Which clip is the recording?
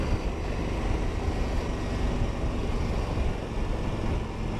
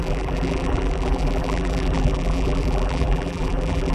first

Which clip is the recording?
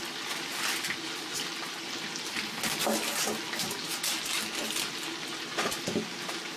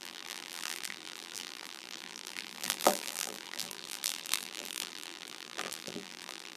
first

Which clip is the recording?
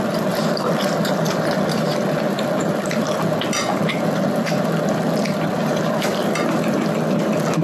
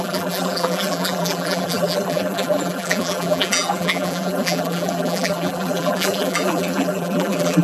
first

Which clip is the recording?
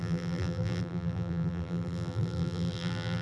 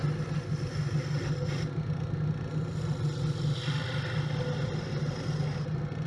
second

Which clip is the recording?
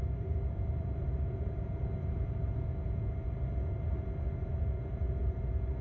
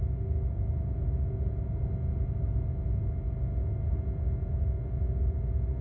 second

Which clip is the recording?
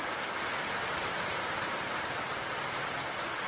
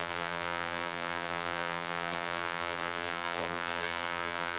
first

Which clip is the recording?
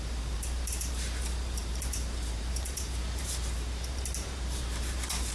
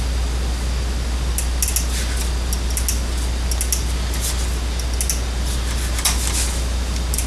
second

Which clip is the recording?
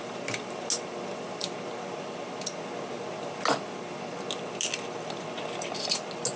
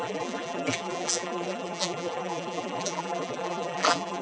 first